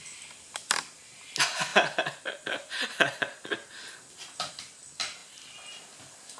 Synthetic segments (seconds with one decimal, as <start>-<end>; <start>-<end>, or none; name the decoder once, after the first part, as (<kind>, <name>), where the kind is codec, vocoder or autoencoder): none

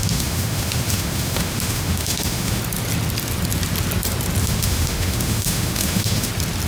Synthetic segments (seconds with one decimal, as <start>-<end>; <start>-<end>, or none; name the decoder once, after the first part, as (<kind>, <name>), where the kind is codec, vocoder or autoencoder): 0.0-2.6 (autoencoder, DAC-VAE); 4.4-6.3

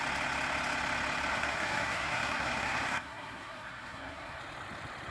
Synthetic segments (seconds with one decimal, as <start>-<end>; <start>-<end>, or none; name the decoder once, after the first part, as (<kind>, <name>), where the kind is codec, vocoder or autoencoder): 1.3-4.4 (codec, SNAC)

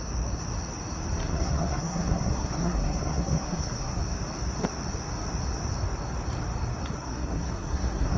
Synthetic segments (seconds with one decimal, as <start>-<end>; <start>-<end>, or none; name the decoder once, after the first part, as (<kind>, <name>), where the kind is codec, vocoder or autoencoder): 1.2-4.0 (codec, SNAC); 6.9-8.2

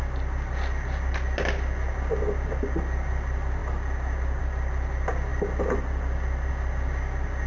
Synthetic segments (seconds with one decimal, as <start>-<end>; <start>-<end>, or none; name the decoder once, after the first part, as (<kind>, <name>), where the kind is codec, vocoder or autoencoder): none

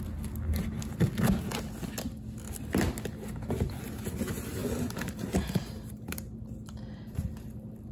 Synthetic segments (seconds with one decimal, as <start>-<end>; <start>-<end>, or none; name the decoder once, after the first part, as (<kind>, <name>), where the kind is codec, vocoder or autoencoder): 4.6-7.9 (vocoder, BigVGAN v2)